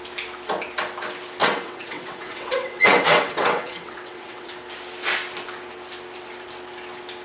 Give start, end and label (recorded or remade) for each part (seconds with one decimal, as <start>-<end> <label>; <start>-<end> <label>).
0.0-1.4 recorded; 1.4-4.5 remade; 4.5-7.2 recorded